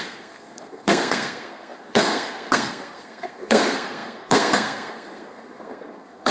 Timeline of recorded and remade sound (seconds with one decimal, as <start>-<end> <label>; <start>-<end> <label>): 0.0-6.3 remade